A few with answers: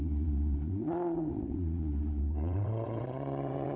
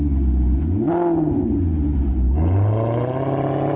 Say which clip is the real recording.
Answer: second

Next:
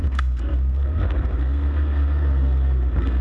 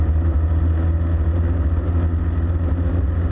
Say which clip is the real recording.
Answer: second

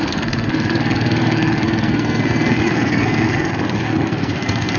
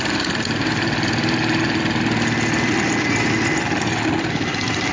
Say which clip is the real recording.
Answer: second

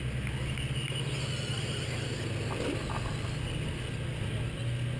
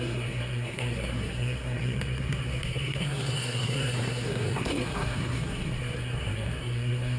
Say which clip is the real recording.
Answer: first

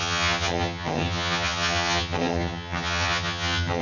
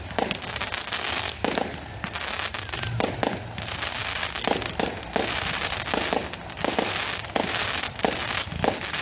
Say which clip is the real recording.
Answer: second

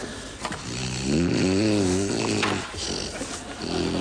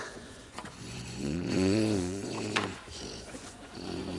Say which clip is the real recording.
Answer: first